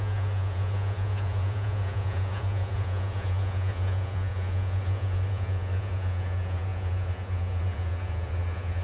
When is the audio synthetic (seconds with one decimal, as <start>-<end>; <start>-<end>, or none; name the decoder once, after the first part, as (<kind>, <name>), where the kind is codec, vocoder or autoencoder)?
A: 0.0-8.8 (vocoder, Vocos)